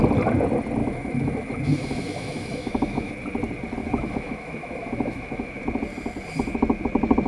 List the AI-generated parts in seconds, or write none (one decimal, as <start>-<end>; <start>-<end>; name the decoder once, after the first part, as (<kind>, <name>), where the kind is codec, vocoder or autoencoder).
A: 0.8-3.1 (autoencoder, DAC-VAE); 3.8-5.6